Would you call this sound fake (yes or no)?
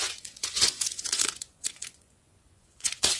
yes